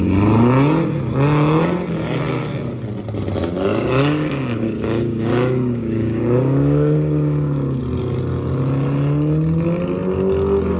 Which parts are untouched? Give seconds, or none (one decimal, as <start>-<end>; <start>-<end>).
0.0-3.7; 7.8-10.8

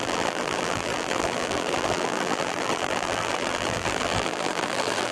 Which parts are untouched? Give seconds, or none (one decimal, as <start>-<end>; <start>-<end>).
none

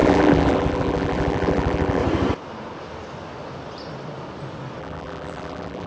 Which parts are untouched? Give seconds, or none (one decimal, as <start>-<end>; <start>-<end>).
2.0-4.8

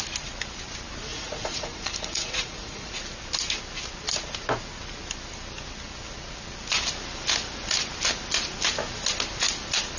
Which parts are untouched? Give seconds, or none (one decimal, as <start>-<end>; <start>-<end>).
0.0-1.1; 2.9-10.0

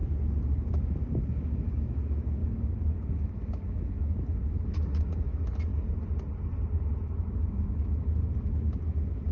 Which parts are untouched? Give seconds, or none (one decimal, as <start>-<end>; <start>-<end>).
0.0-0.7; 5.7-7.5

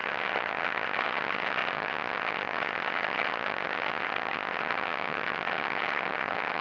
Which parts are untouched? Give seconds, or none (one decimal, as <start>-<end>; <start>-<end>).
none

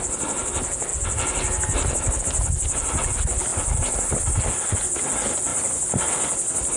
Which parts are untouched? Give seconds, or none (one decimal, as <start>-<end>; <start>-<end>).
0.0-5.5; 6.1-6.8

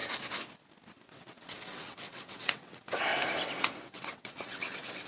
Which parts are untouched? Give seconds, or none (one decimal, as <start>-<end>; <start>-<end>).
0.0-0.9; 3.1-3.8